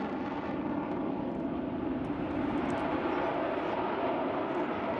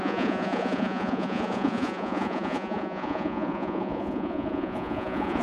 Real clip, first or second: first